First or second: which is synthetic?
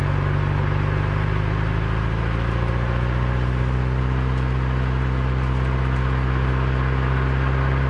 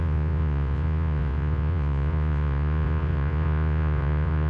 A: second